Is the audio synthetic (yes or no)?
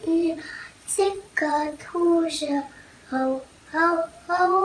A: yes